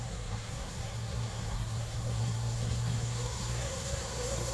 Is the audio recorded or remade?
remade